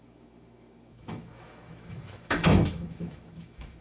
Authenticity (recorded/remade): remade